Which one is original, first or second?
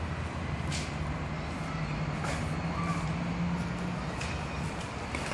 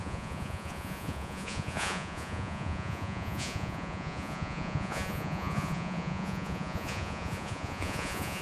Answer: first